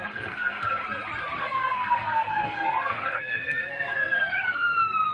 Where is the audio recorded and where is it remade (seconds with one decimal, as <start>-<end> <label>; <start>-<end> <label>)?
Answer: 0.0-0.8 remade; 0.8-1.4 recorded; 1.4-5.1 remade